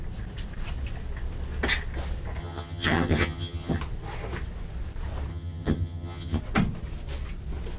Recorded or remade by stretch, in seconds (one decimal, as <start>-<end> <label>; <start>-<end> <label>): 0.0-2.4 recorded; 2.4-3.8 remade; 3.8-5.3 recorded; 5.3-6.4 remade; 6.4-7.8 recorded